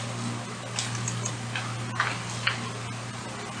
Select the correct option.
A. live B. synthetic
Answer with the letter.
A